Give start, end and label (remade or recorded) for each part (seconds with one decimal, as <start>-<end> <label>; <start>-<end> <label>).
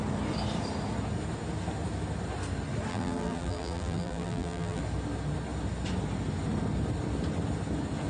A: 0.0-2.9 recorded; 2.9-4.8 remade; 4.8-8.1 recorded